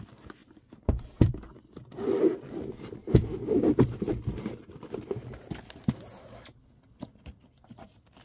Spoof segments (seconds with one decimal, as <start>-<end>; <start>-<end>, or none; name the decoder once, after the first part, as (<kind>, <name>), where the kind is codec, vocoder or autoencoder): 0.4-1.3 (vocoder, BigVGAN v2); 3.0-4.1